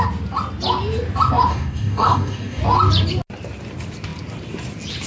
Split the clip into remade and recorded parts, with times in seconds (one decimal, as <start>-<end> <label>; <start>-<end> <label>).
0.0-1.5 recorded; 1.5-2.6 remade; 2.6-5.1 recorded